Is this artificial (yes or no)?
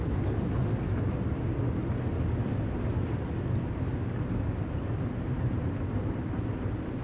no